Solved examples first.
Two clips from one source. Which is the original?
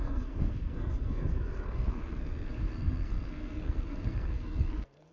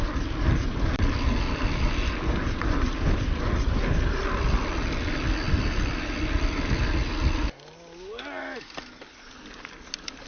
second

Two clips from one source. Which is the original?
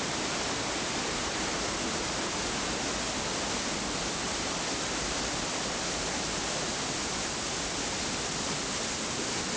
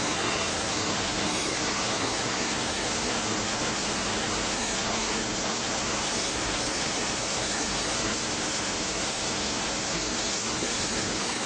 first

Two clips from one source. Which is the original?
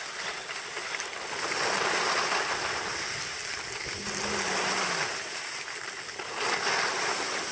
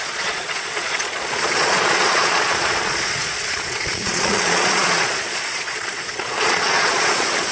first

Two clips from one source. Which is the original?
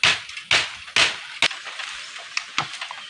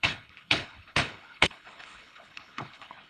first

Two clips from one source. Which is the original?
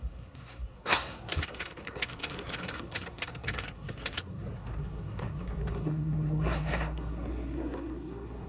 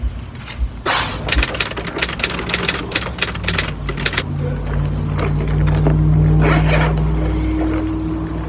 second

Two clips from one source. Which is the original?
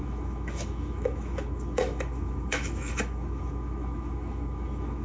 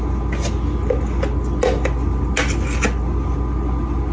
second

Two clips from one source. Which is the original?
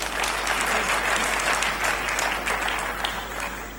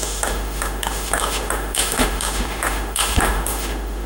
first